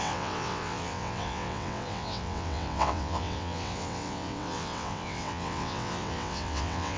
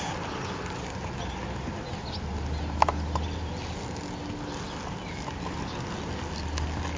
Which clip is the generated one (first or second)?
first